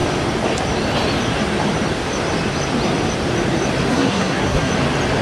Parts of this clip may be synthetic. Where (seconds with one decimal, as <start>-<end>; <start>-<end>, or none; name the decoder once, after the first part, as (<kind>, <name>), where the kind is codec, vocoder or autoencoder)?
3.9-4.7 (codec, SNAC)